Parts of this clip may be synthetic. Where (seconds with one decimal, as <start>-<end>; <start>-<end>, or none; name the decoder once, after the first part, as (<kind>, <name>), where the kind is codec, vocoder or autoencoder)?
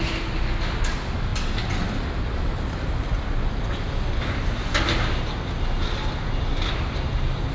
none